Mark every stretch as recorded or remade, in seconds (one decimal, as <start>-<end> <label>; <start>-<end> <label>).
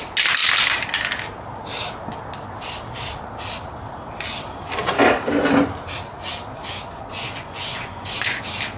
0.0-6.5 recorded; 6.5-8.4 remade; 8.4-8.8 recorded